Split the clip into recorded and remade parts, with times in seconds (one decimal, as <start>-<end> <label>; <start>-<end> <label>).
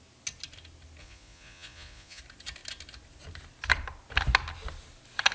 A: 0.0-1.0 recorded; 1.0-2.2 remade; 2.2-5.3 recorded